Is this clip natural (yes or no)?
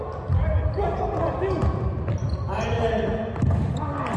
yes